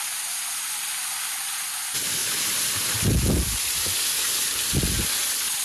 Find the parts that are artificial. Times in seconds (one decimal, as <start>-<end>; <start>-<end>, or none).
none

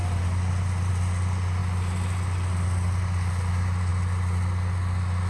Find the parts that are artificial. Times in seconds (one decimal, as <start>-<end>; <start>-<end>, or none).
none